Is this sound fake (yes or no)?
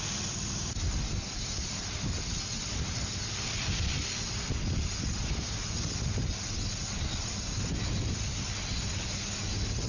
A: no